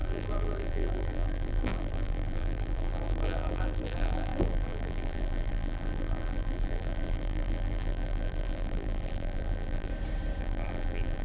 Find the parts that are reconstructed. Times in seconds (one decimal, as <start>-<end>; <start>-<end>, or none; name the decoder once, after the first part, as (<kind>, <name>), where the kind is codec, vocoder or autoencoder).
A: 0.0-9.9 (vocoder, BigVGAN v2); 10.4-11.2